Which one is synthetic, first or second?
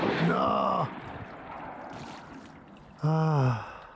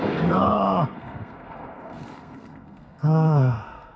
second